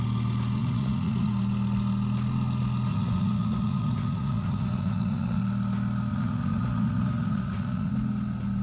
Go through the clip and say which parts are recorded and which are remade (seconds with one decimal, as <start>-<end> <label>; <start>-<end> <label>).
0.0-0.6 recorded; 0.6-1.3 remade; 1.3-2.9 recorded; 2.9-5.4 remade; 5.4-6.1 recorded; 6.1-7.9 remade; 7.9-8.6 recorded